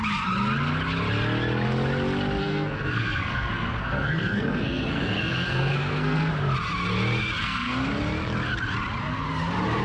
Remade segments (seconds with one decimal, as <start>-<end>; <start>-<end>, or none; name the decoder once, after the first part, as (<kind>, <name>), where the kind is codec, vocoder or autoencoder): 2.4-6.3 (codec, SNAC); 7.4-7.9